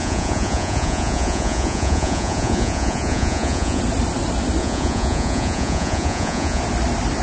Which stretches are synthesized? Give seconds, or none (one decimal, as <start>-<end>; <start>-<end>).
0.0-3.8; 4.6-6.6